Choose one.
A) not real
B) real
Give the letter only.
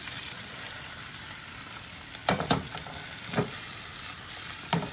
A